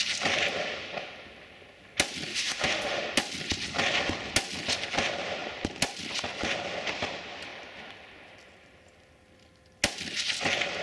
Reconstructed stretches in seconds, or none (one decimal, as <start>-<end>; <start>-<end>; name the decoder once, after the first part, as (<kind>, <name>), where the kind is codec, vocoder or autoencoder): 2.3-3.0 (autoencoder, DAC-VAE)